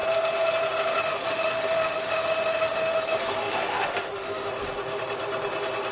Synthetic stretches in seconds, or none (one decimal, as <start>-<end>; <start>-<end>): 1.0-4.5